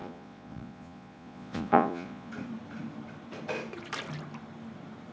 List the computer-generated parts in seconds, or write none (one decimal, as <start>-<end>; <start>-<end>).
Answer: 0.0-2.3

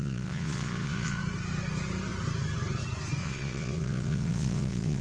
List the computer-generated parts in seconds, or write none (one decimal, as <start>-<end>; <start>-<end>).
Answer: 0.0-1.2; 3.2-5.0

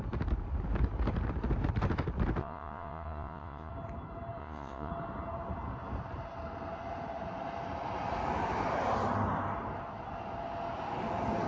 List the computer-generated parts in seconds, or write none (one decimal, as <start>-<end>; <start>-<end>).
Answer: 2.4-3.7; 4.4-4.9

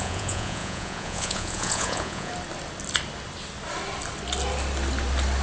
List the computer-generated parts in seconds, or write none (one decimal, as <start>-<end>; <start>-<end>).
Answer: 0.0-2.3

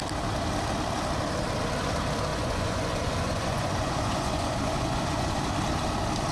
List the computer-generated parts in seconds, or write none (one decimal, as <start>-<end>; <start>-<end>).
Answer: 2.3-5.4